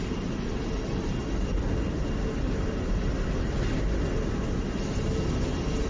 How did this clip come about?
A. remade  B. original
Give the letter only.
B